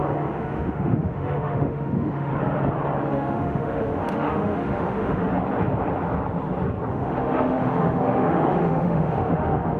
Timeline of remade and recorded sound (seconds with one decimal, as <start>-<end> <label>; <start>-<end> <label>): 0.0-2.3 remade; 2.3-3.1 recorded; 3.1-5.3 remade; 5.3-6.9 recorded; 6.9-9.8 remade